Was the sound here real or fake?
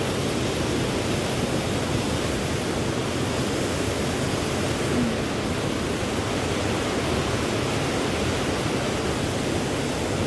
real